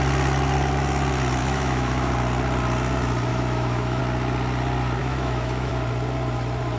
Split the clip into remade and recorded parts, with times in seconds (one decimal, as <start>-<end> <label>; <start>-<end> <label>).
0.0-1.4 recorded; 1.4-2.1 remade; 2.1-3.3 recorded; 3.3-4.0 remade; 4.0-5.0 recorded; 5.0-5.7 remade; 5.7-6.8 recorded